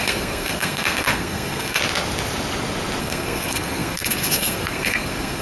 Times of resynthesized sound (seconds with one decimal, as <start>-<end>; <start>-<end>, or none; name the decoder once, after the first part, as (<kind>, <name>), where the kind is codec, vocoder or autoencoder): 0.0-1.8 (codec, SNAC); 3.0-5.4